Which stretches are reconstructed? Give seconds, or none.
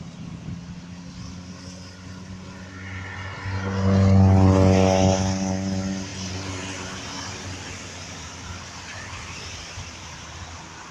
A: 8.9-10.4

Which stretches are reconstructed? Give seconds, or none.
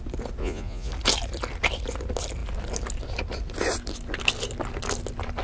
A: 0.4-0.9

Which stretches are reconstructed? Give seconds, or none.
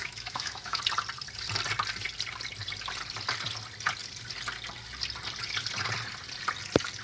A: 0.0-0.8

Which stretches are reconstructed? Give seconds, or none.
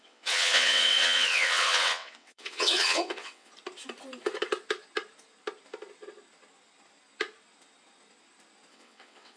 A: 0.0-3.5; 8.7-9.4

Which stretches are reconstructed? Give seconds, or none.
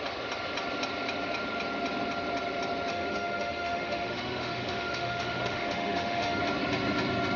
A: 2.9-6.4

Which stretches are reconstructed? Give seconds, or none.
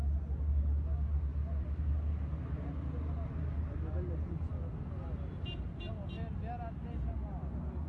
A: none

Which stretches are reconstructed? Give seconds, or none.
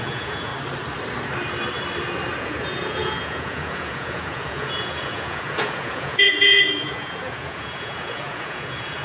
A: 0.0-0.5; 2.4-9.0